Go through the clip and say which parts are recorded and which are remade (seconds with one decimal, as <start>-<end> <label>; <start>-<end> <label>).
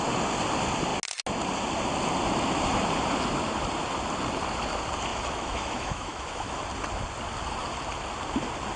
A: 0.0-5.1 recorded; 5.1-6.6 remade; 6.6-8.8 recorded